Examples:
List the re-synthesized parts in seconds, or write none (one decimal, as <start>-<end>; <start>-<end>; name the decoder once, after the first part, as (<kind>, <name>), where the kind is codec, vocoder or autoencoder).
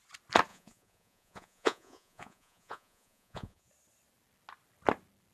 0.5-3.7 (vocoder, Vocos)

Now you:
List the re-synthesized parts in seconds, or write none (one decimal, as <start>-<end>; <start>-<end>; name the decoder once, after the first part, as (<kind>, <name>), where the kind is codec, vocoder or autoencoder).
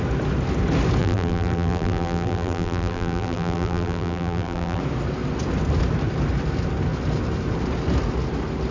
1.0-4.8 (vocoder, BigVGAN v2)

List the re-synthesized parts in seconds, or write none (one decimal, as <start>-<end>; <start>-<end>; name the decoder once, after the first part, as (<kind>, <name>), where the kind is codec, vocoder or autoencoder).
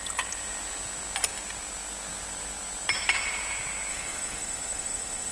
3.9-5.3 (codec, HILCodec)